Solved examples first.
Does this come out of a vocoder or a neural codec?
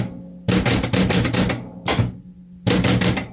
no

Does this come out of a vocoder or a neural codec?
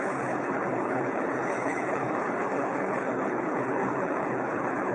yes